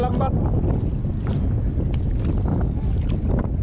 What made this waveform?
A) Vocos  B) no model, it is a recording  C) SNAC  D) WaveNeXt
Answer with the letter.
B